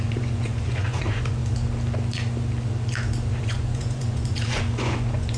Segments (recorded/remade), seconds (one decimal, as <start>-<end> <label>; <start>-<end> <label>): 0.0-1.4 remade; 1.4-3.4 recorded; 3.4-5.4 remade